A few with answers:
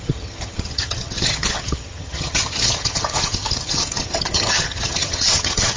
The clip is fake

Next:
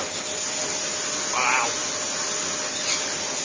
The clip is real